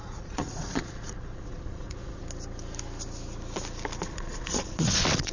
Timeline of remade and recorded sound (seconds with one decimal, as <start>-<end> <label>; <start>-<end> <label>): 0.0-2.2 remade; 2.2-4.1 recorded; 4.1-5.3 remade